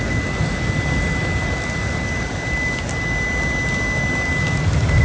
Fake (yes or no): no